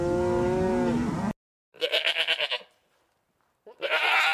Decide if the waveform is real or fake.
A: real